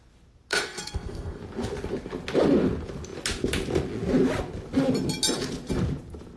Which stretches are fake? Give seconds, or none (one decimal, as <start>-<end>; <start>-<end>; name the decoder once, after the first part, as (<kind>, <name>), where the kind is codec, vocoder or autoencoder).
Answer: 0.5-1.4 (codec, SNAC)